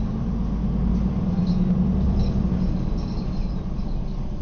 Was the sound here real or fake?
real